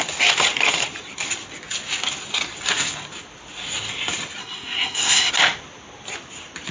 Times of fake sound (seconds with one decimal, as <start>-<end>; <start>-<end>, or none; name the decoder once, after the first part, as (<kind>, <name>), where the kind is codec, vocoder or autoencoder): 4.4-5.3 (codec, SNAC)